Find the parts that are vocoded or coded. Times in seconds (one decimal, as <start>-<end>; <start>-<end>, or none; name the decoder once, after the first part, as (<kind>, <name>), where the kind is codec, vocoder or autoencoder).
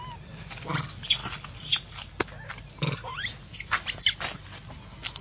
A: 3.1-4.0 (vocoder, BigVGAN v2)